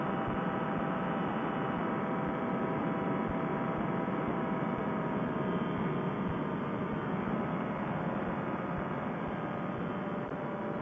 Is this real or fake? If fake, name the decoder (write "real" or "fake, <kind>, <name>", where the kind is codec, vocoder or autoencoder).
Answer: real